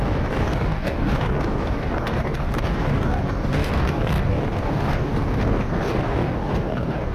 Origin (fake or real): fake